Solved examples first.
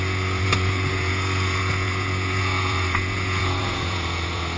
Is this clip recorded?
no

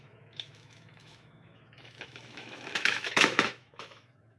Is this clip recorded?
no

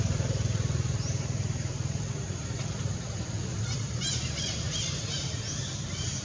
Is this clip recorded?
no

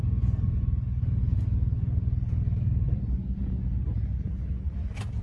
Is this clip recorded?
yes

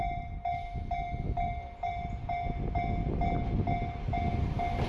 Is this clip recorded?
yes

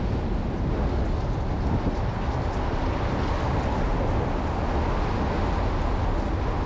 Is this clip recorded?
yes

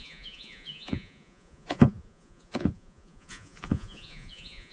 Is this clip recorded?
no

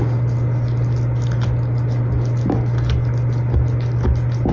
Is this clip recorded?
yes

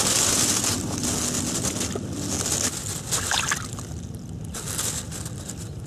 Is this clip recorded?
yes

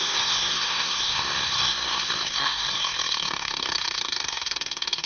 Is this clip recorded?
no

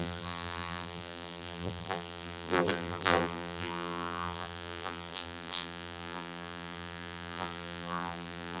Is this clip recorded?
no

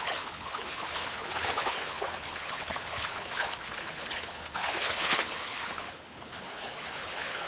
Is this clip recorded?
no